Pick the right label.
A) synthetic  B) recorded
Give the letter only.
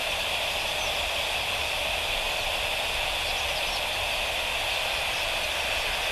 B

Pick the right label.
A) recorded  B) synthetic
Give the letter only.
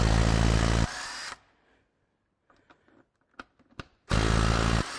A